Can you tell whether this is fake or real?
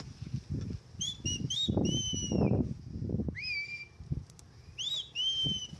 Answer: real